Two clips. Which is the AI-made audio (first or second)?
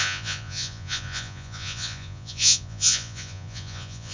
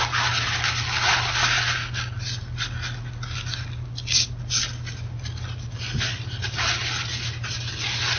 first